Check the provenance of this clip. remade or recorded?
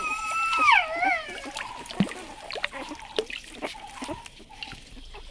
recorded